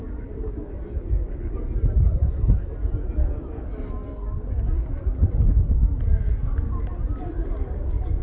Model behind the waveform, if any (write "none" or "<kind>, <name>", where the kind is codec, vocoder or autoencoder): none